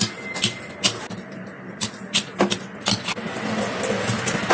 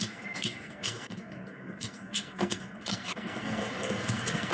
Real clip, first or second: first